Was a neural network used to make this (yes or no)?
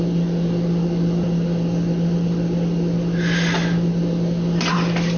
no